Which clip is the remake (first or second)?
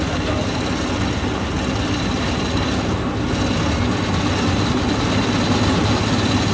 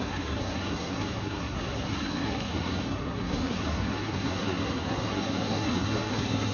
second